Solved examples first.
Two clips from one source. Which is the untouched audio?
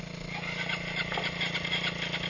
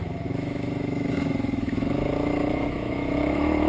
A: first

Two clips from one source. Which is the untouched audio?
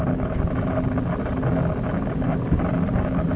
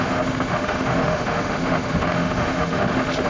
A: first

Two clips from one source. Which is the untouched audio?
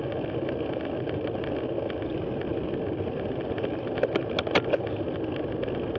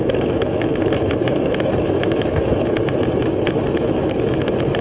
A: first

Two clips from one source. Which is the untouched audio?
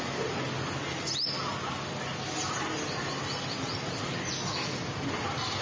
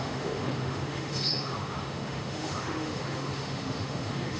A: first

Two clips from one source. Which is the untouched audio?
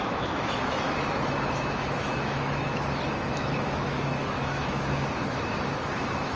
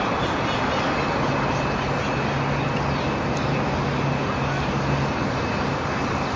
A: second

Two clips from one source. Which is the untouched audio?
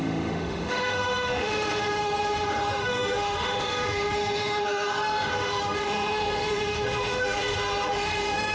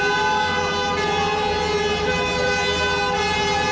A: second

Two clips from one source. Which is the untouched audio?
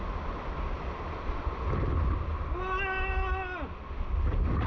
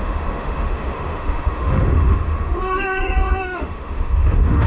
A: first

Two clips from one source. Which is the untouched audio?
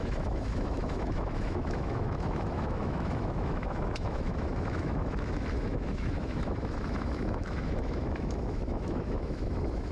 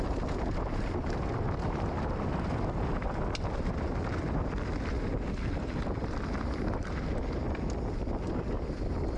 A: second